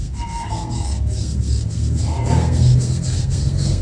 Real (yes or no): no